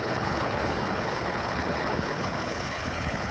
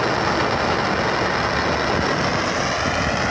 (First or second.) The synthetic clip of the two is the first